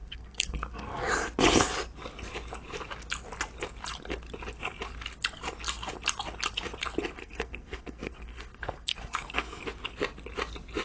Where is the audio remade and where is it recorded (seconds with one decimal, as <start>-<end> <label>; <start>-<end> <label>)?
0.0-1.1 remade; 1.1-7.2 recorded; 7.2-9.6 remade; 9.6-10.8 recorded